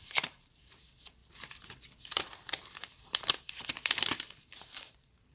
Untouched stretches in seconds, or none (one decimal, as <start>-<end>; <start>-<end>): none